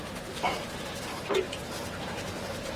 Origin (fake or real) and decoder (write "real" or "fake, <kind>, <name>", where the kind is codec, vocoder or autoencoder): fake, vocoder, BigVGAN v2